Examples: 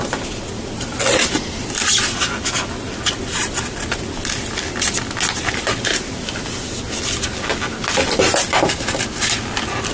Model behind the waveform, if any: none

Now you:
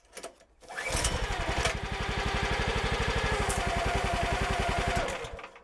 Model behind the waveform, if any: none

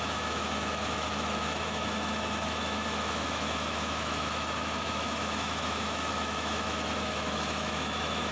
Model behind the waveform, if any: autoencoder, DAC-VAE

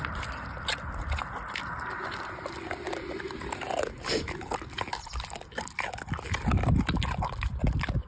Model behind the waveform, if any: none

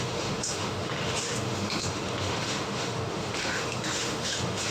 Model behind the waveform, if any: autoencoder, DAC-VAE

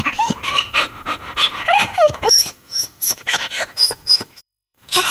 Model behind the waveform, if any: autoencoder, DAC-VAE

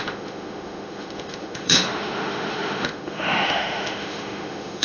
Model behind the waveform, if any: autoencoder, DAC-VAE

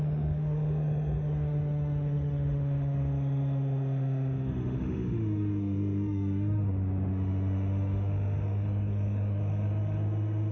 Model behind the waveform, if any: autoencoder, DAC-VAE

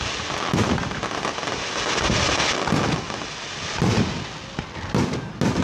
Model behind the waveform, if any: none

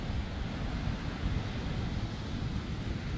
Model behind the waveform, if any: none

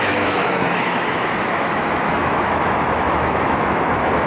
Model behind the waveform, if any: autoencoder, DAC-VAE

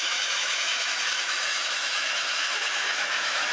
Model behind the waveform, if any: autoencoder, DAC-VAE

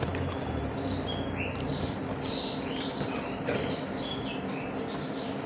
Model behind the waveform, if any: none